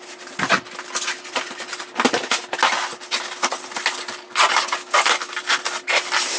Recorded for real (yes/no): yes